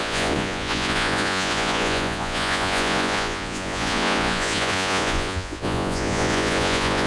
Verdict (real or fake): fake